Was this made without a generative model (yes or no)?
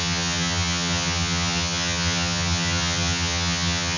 no